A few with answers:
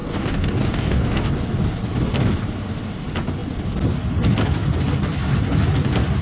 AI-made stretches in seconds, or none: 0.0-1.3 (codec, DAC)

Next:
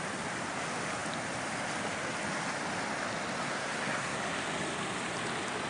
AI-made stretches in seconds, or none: 3.4-4.2 (codec, SNAC)

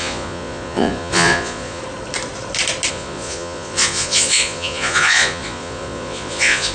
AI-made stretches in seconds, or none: 0.0-1.8 (vocoder, Vocos); 2.9-6.7

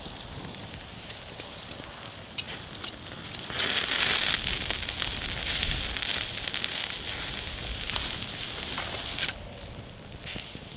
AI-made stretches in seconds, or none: none

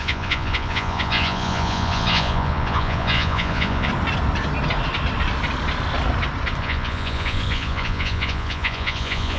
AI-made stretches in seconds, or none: 0.0-3.9 (vocoder, Vocos); 6.6-9.4